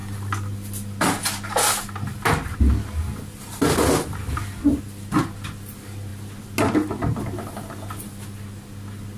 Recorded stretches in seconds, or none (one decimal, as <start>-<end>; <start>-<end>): 0.0-9.2